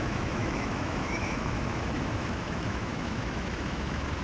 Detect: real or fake fake